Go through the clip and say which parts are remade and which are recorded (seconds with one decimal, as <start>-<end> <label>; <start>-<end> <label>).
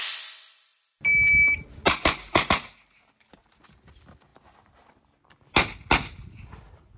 0.0-7.0 recorded